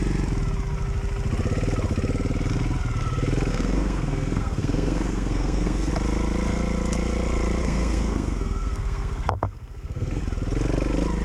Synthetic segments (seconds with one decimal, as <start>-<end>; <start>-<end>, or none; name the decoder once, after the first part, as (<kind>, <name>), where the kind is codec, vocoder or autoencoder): 3.5-5.9 (codec, SNAC); 7.6-10.2